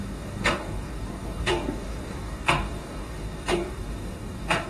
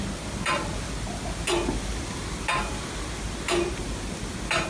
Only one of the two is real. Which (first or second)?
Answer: second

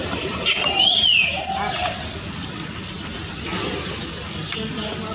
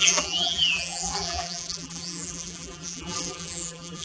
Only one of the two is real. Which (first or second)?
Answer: first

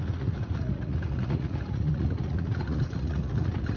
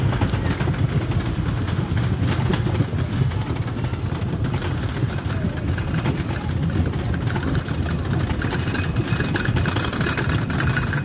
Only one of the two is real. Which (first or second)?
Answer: second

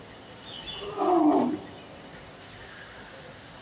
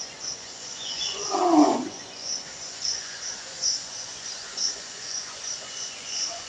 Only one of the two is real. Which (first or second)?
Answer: first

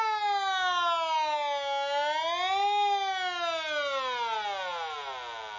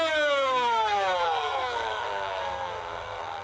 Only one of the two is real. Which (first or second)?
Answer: first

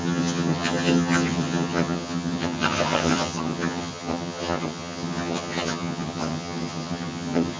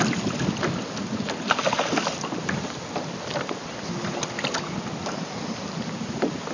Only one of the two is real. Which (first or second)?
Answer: second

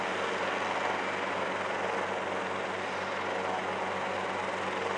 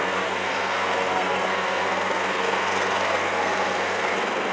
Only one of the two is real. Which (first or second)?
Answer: first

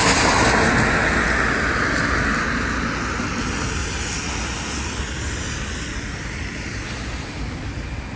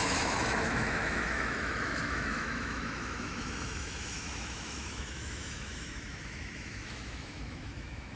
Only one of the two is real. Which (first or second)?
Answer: first